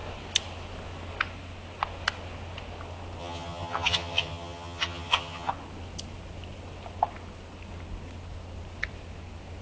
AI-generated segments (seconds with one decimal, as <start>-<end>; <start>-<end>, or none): 3.2-5.5